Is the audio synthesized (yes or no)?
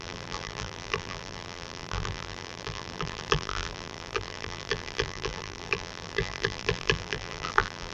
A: yes